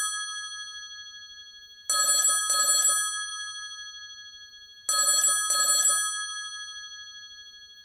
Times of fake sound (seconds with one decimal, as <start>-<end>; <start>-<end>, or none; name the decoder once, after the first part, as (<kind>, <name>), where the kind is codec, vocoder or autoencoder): none